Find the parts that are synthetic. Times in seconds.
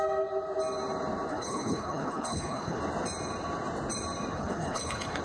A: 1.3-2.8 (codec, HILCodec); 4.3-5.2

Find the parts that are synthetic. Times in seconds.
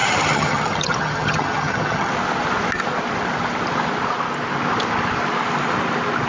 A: 0.0-2.1 (vocoder, HiFi-GAN)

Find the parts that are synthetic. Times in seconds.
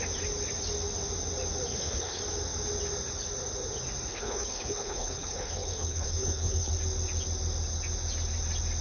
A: 1.7-2.2 (codec, HILCodec); 4.1-6.7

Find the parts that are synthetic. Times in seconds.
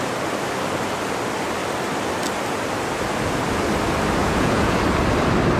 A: 4.2-4.8 (vocoder, Vocos)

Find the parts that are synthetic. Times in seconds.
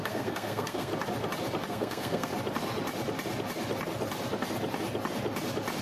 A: 0.0-0.9 (codec, SNAC); 1.7-2.3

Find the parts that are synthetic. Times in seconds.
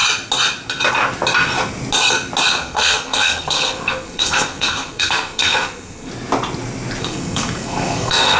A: 2.5-6.1 (codec, SNAC); 7.0-8.4